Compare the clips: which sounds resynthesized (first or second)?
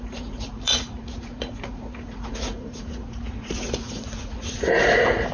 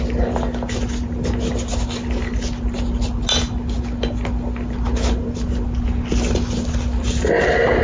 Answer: first